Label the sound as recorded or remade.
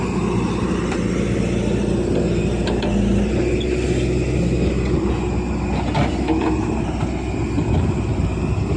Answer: recorded